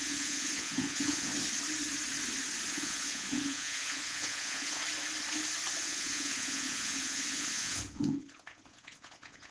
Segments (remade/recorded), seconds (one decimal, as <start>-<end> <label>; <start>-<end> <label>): 0.0-1.3 remade; 1.3-2.7 recorded; 2.7-4.8 remade; 4.8-5.8 recorded; 5.8-9.5 remade